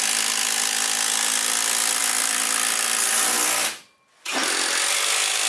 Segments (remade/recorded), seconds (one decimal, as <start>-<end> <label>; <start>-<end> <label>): 0.0-5.5 recorded